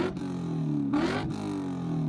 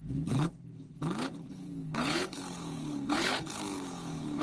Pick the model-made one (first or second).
second